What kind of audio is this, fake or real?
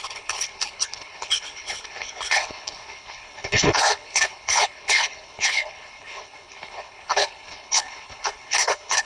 fake